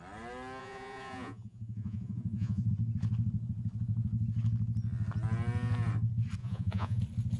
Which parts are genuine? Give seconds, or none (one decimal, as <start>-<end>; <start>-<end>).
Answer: 0.0-0.6; 2.7-6.4; 7.0-7.4